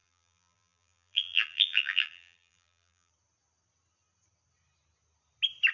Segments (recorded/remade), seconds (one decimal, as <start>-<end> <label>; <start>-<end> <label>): 0.0-3.1 remade; 3.1-5.7 recorded